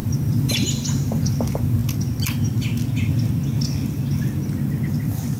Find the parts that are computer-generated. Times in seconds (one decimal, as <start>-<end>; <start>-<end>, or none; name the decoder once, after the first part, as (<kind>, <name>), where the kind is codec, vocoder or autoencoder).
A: 0.0-1.8 (vocoder, BigVGAN v2); 5.0-5.4

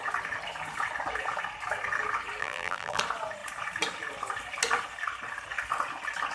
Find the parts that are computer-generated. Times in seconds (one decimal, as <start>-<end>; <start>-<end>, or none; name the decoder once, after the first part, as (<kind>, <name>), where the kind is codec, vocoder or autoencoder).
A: 2.4-3.0 (vocoder, BigVGAN v2)

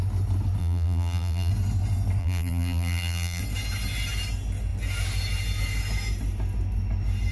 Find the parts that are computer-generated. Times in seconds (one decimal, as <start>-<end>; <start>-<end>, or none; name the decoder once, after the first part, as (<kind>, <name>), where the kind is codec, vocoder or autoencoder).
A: 0.6-1.5 (vocoder, BigVGAN v2); 2.2-3.4

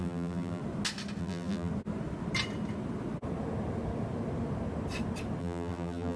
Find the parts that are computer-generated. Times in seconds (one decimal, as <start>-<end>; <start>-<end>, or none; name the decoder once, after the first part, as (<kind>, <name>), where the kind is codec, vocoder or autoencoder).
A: 0.0-0.6 (vocoder, BigVGAN v2); 1.2-1.7; 5.4-6.2

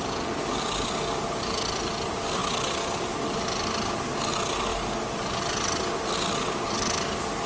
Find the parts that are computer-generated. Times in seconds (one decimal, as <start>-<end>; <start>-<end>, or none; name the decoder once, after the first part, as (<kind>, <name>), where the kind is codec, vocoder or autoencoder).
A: 4.7-5.4 (vocoder, BigVGAN v2)

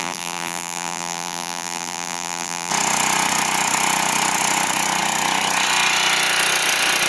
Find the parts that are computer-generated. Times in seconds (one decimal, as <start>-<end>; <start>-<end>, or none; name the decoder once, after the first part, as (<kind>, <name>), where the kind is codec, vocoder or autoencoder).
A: 0.0-2.7 (vocoder, BigVGAN v2)

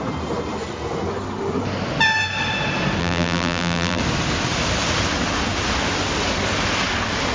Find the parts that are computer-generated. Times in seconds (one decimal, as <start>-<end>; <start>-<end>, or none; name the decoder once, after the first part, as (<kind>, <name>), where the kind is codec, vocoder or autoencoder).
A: 3.0-4.0 (vocoder, BigVGAN v2)